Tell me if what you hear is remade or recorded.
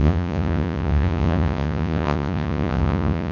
remade